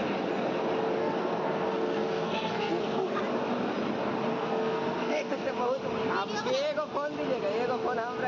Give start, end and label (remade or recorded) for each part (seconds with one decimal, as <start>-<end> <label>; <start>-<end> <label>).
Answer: 0.0-1.0 recorded; 1.0-3.2 remade; 3.2-4.3 recorded; 4.3-5.5 remade; 5.5-8.3 recorded